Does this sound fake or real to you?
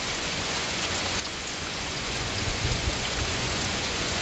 fake